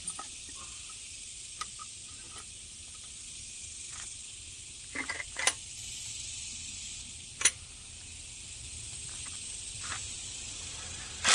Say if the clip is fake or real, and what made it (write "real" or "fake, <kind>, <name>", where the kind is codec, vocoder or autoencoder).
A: fake, vocoder, BigVGAN v2